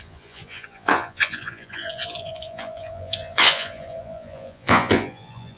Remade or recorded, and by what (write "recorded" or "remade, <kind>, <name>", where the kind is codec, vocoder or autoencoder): remade, vocoder, Vocos